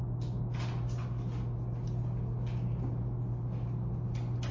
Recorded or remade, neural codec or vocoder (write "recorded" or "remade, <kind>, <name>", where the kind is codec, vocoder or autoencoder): recorded